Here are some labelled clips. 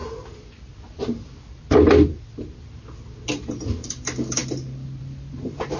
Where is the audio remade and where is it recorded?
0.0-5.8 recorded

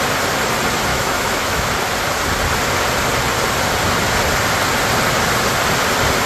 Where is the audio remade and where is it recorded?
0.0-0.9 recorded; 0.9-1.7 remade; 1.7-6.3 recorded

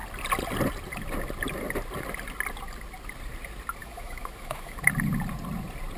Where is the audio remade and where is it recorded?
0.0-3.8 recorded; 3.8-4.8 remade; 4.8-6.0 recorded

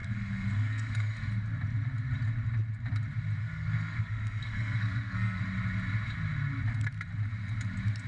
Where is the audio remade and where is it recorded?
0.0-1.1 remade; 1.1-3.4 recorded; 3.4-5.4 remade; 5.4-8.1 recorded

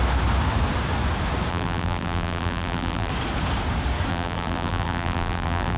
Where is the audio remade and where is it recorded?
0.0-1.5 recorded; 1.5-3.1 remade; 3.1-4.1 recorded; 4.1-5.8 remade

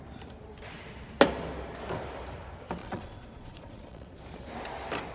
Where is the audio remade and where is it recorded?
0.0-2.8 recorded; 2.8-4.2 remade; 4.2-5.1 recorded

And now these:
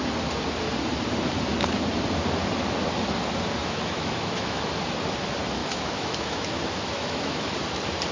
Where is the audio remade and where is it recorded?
0.0-3.6 recorded; 3.6-4.7 remade; 4.7-5.6 recorded; 5.6-7.5 remade; 7.5-8.1 recorded

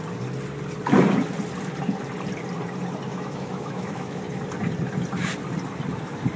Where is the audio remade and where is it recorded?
0.0-3.1 recorded; 3.1-4.2 remade; 4.2-6.4 recorded